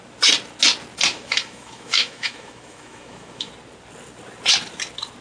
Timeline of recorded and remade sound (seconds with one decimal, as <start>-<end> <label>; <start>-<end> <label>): 0.0-1.1 recorded; 1.1-3.5 remade; 3.5-5.2 recorded